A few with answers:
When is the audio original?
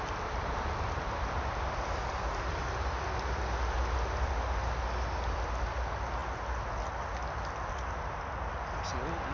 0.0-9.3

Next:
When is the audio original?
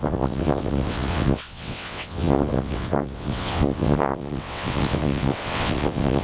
none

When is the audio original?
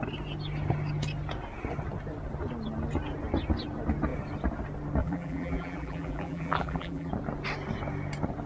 0.0-5.0; 7.1-8.5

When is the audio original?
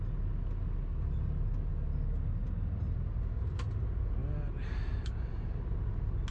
0.0-6.3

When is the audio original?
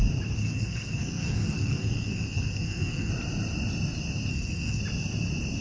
0.0-0.4; 3.1-4.3; 4.8-5.6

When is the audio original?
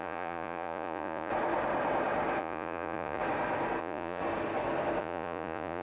1.3-2.4; 3.2-3.8; 4.2-5.0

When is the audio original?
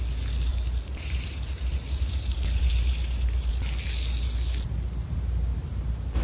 0.0-0.5; 3.5-6.2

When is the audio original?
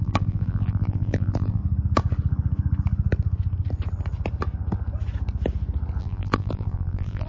1.6-6.0